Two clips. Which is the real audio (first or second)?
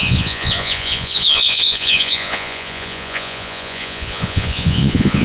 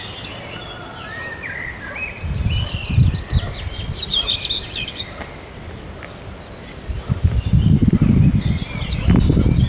second